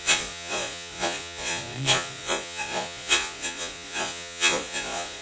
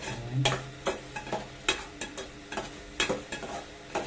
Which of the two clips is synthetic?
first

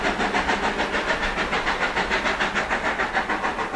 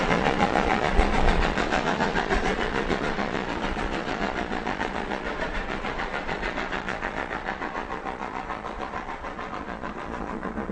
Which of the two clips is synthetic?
second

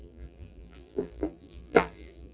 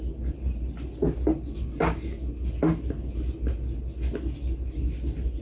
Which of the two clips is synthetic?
first